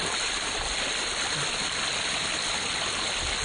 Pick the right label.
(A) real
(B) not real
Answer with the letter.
A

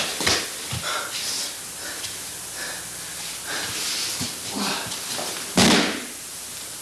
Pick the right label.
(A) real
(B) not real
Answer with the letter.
A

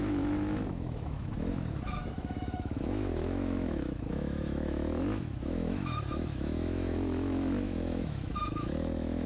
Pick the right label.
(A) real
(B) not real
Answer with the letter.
B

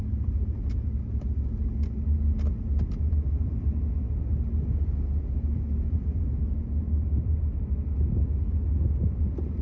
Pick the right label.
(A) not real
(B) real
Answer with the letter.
B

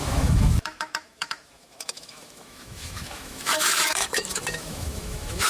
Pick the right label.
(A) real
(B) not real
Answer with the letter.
B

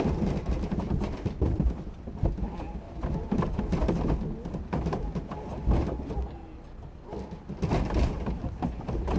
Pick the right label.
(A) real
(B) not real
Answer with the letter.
A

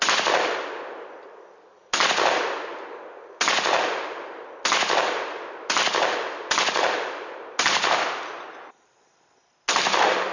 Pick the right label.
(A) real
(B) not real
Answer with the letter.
A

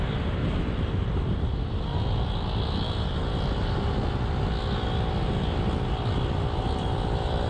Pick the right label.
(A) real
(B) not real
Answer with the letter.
A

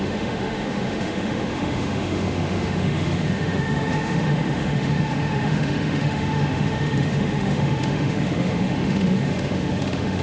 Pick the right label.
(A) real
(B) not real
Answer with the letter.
B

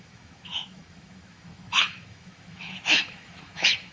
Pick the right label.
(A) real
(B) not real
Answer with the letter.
B